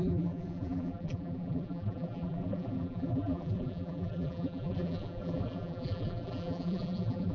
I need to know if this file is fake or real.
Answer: fake